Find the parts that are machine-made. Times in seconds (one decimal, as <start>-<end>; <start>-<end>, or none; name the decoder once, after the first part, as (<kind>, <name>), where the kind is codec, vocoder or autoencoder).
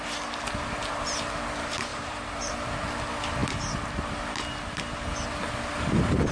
1.9-2.5 (vocoder, BigVGAN v2)